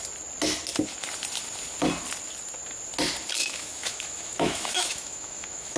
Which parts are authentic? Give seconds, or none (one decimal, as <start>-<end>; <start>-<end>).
0.0-3.4